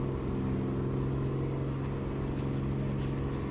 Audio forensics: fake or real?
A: real